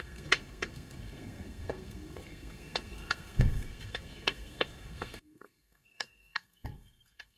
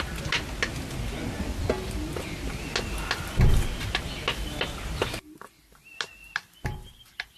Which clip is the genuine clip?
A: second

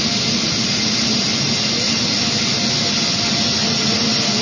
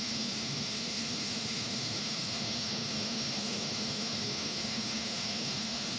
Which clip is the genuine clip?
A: first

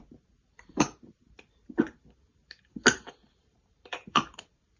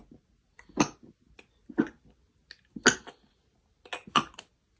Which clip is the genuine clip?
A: second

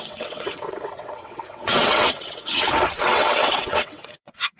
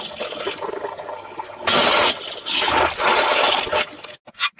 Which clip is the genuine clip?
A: second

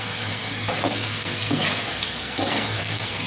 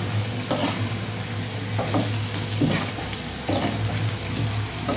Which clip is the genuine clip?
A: second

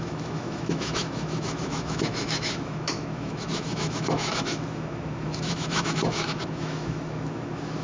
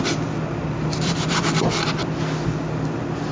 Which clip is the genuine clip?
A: second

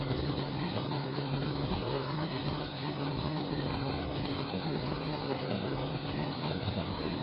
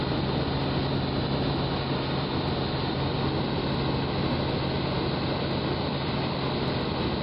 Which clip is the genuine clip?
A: second